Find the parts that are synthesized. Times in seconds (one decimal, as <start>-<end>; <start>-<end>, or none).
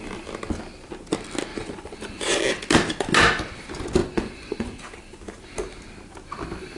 1.5-2.4; 4.0-4.8